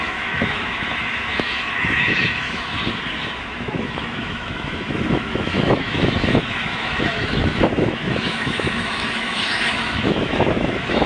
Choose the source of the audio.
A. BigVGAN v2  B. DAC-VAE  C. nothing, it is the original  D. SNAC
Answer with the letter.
B